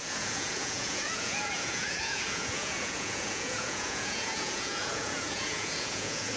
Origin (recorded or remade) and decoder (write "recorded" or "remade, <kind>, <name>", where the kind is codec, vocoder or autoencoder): remade, vocoder, Vocos